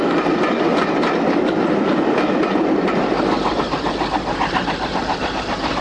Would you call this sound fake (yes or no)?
no